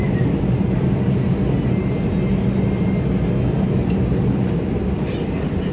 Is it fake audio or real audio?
real